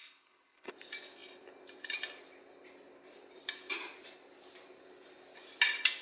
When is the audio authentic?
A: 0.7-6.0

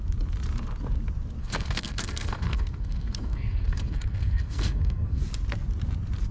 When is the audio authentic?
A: 0.0-1.4; 5.2-6.3

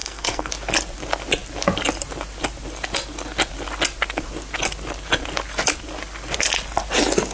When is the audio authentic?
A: 0.5-7.3